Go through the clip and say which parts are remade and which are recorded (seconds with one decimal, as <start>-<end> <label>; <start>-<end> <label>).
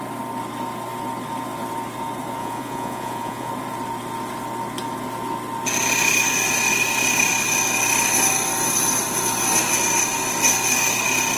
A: 0.0-2.4 recorded; 2.4-3.5 remade; 3.5-11.4 recorded